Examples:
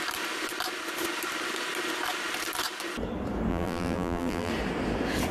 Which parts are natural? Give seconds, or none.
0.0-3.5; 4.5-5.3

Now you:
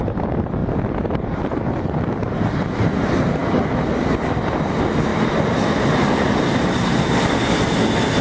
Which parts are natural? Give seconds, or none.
0.0-5.1; 6.2-8.2

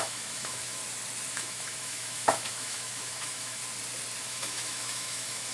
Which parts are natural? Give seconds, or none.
0.8-1.3; 3.6-4.2

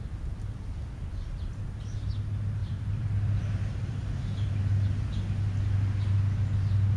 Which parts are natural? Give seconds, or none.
0.0-2.6; 3.4-7.0

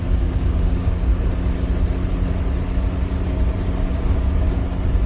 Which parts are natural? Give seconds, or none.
1.1-3.9; 4.6-5.1

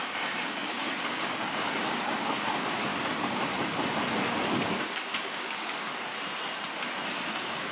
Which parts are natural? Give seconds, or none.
2.9-4.9; 6.1-7.3

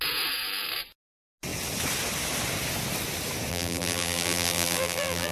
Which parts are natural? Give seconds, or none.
0.0-3.5